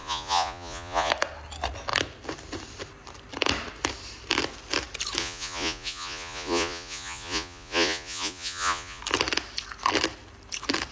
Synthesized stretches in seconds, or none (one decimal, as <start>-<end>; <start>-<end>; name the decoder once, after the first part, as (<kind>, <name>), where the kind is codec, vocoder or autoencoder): 0.0-1.1 (vocoder, Vocos); 5.2-9.0